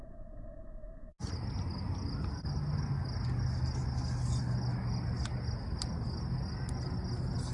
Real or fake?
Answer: real